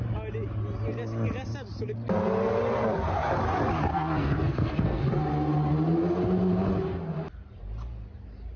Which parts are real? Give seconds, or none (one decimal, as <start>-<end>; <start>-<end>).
0.0-3.9; 5.0-8.6